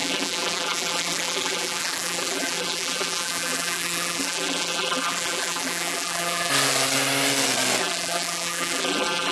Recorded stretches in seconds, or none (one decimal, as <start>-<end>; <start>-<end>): 6.5-7.8